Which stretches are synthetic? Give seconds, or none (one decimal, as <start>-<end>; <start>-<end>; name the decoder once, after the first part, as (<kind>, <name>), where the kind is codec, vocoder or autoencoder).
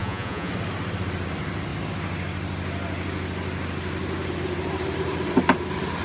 0.0-0.5 (vocoder, Vocos)